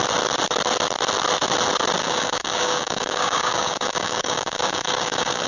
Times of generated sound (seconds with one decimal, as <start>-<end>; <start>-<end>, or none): 2.0-5.5